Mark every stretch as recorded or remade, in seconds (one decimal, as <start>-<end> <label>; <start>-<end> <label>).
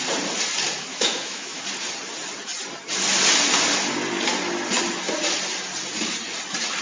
0.0-0.9 recorded; 0.9-1.6 remade; 1.6-6.8 recorded